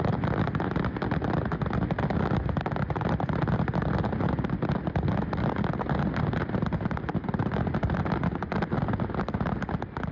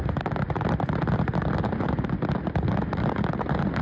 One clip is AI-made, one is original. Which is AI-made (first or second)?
second